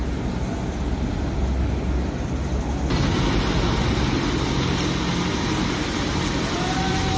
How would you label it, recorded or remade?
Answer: recorded